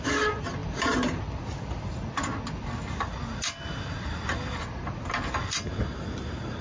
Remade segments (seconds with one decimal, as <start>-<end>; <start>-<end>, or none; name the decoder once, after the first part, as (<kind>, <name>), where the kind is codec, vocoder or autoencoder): none